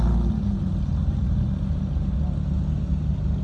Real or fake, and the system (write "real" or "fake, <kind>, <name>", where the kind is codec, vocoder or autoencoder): real